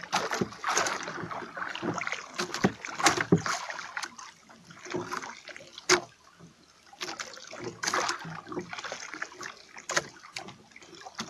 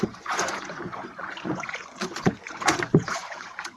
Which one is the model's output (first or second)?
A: second